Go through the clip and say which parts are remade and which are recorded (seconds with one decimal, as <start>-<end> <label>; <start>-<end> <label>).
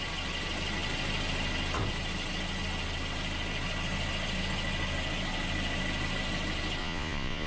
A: 0.0-6.8 recorded; 6.8-7.5 remade